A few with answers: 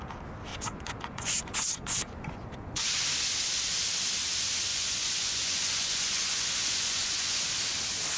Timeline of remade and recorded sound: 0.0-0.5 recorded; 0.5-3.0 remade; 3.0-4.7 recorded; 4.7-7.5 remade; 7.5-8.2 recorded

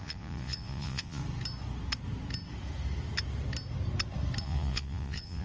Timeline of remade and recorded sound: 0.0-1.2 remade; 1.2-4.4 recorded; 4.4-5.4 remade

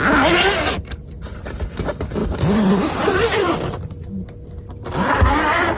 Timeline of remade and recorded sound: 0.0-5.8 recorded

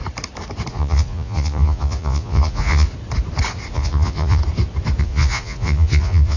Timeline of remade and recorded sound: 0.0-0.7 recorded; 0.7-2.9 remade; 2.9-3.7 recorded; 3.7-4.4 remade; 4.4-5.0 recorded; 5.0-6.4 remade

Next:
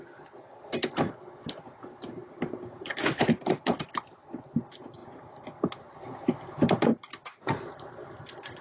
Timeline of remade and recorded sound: 0.0-8.6 recorded

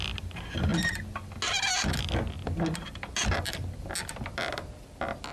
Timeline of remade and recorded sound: 0.0-5.3 recorded